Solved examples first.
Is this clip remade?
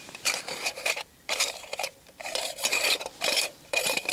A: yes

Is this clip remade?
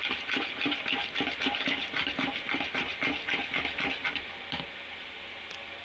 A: no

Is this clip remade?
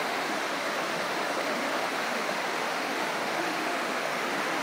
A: yes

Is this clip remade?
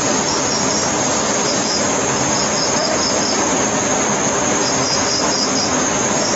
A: no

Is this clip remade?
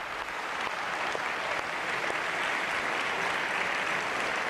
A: no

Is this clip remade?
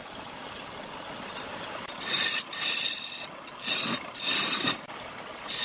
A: no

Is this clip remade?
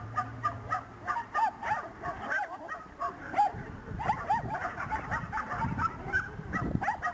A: yes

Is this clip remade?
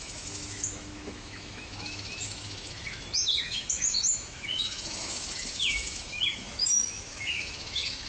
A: yes